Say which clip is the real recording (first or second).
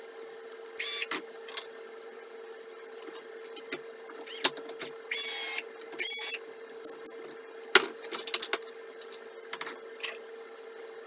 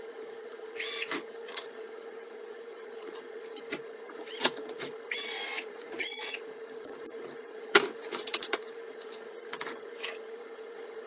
first